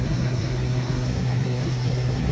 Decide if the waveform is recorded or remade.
remade